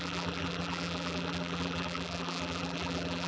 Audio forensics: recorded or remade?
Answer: remade